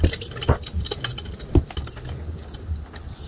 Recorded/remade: recorded